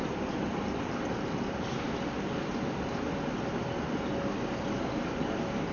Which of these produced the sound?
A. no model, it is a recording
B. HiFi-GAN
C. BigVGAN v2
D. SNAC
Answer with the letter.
A